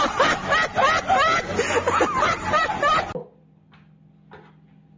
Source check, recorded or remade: recorded